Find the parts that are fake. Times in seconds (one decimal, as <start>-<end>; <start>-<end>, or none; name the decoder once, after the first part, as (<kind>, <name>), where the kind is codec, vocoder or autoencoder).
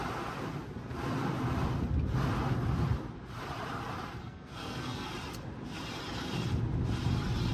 4.2-5.1 (codec, SNAC)